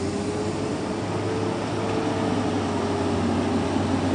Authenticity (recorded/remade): recorded